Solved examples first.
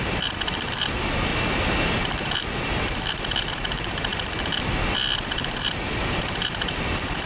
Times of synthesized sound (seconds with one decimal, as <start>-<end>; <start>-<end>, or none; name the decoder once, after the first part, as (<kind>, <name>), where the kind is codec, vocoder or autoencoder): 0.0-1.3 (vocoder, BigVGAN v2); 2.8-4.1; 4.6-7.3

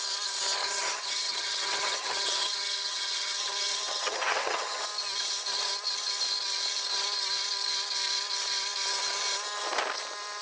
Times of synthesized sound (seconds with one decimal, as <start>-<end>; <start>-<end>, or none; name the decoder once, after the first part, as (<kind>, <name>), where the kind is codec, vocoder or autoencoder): 0.6-4.8 (vocoder, HiFi-GAN)

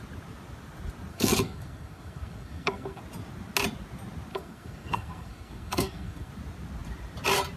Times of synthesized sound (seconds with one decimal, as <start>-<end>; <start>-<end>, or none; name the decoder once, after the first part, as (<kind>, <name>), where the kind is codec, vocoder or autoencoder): 1.1-3.0 (codec, SNAC); 4.3-6.3

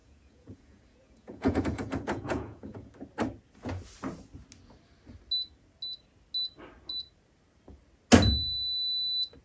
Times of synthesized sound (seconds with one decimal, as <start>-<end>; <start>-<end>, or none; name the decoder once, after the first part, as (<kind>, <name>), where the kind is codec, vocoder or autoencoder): 0.0-2.9 (vocoder, Vocos)

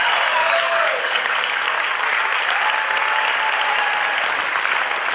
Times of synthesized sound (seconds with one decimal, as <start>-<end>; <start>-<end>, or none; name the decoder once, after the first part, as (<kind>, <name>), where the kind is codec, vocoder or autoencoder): 0.4-1.6 (codec, DAC)